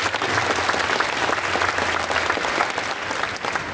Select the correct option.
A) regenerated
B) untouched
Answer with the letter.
B